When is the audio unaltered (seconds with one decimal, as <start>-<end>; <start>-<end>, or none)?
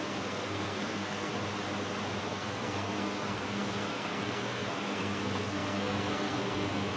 1.3-2.2